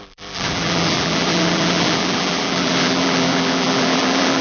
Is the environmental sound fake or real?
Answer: fake